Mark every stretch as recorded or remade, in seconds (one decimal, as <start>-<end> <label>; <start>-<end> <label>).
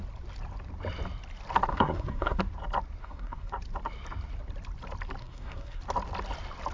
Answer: 0.0-1.7 recorded; 1.7-2.4 remade; 2.4-3.0 recorded; 3.0-3.5 remade; 3.5-5.2 recorded; 5.2-5.8 remade; 5.8-6.7 recorded